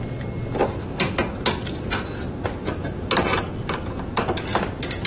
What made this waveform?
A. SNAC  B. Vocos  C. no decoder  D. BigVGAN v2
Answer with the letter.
C